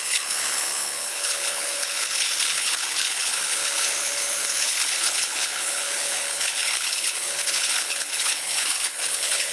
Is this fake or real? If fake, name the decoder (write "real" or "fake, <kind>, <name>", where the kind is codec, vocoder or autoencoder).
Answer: fake, codec, HILCodec